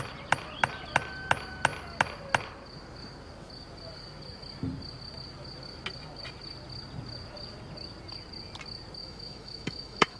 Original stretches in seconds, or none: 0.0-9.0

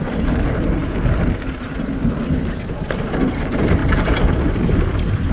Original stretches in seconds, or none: 0.0-5.3